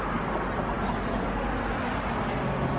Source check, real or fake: real